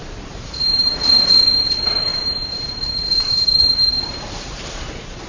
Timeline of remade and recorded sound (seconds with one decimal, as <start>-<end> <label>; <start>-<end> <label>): 0.0-5.3 remade

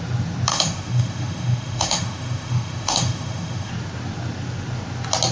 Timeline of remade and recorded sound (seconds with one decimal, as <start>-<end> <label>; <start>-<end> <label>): 0.0-0.5 recorded; 0.5-3.7 remade; 3.7-5.3 recorded

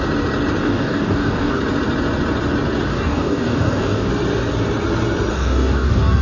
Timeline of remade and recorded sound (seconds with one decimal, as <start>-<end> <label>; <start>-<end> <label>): 0.0-0.6 recorded; 0.6-1.6 remade; 1.6-2.9 recorded; 2.9-4.1 remade; 4.1-5.3 recorded; 5.3-6.2 remade